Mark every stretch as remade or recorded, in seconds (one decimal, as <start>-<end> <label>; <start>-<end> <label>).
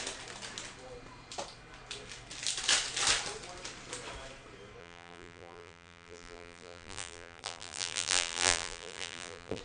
0.0-4.8 recorded; 4.8-9.6 remade